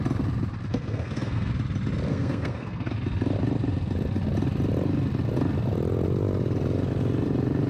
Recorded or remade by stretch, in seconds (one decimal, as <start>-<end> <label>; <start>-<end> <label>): 0.0-0.7 recorded; 0.7-1.5 remade; 1.5-2.1 recorded; 2.1-2.9 remade; 2.9-7.7 recorded